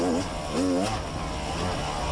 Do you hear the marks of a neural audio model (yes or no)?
no